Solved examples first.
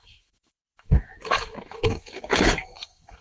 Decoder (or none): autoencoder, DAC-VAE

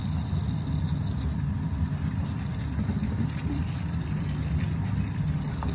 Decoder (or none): none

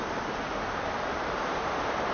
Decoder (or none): vocoder, BigVGAN v2